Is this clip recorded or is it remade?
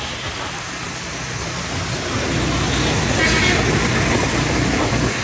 recorded